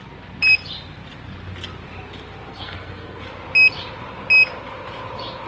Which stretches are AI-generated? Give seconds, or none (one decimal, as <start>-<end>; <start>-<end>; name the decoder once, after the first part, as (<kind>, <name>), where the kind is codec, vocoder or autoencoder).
2.5-3.2 (codec, SNAC)